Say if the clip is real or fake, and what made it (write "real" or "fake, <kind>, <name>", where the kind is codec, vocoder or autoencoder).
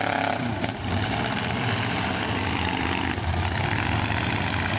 fake, vocoder, BigVGAN v2